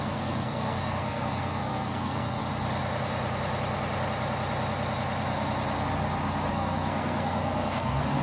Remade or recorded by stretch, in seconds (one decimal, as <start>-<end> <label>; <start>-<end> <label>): 0.0-2.4 remade; 2.4-6.5 recorded; 6.5-8.2 remade